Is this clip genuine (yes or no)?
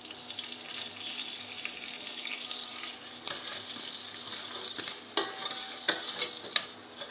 yes